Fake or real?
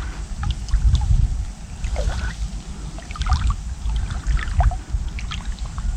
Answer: real